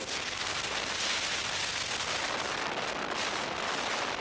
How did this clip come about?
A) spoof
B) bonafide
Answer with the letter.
B